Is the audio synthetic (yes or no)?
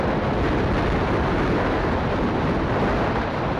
no